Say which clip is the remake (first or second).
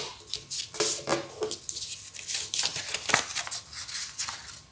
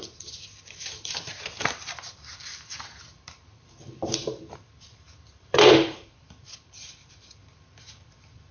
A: second